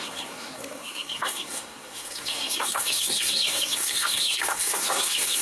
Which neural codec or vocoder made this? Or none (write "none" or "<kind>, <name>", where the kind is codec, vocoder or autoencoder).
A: codec, SNAC